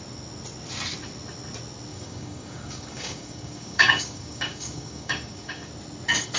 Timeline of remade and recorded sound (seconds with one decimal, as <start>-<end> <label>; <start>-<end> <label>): 0.0-1.9 recorded; 1.9-5.7 remade; 5.7-6.4 recorded

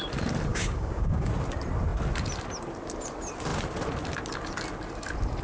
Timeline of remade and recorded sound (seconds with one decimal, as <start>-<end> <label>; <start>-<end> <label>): 0.0-0.5 recorded; 0.5-1.3 remade; 1.3-5.4 recorded